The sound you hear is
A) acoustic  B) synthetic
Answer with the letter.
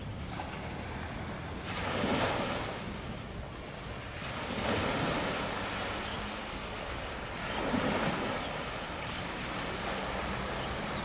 A